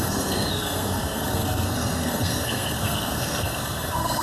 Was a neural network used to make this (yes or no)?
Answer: yes